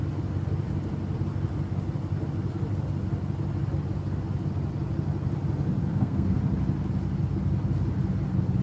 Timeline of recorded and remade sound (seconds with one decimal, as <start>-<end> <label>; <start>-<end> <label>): 0.0-5.9 recorded; 5.9-6.4 remade; 6.4-8.6 recorded

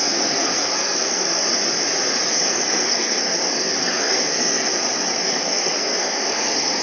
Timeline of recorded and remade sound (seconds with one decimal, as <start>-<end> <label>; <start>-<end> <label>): 0.0-1.5 remade; 1.5-2.3 recorded; 2.3-4.7 remade; 4.7-5.2 recorded; 5.2-6.8 remade

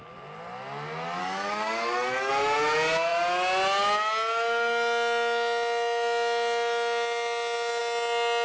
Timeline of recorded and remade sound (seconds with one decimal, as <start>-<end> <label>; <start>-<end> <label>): 0.0-1.2 recorded; 1.2-2.3 remade; 2.3-8.4 recorded